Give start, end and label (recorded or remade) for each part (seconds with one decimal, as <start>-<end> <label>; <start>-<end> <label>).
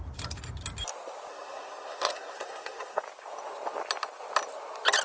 0.0-1.3 recorded; 1.3-3.0 remade; 3.0-5.0 recorded